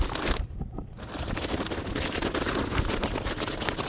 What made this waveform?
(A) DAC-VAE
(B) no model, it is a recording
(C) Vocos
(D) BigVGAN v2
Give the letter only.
B